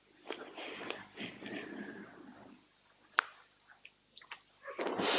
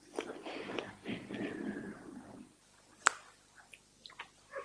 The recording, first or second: first